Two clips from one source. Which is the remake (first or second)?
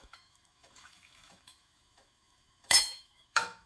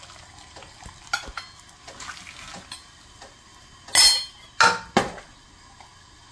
first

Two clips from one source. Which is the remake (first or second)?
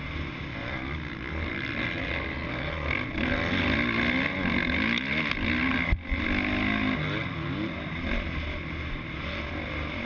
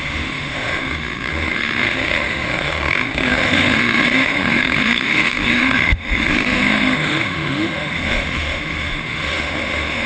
second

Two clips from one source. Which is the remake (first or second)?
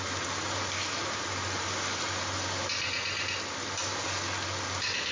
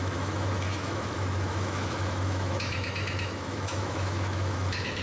second